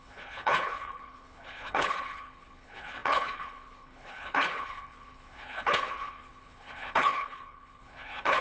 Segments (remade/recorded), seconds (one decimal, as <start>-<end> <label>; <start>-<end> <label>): 0.0-8.4 remade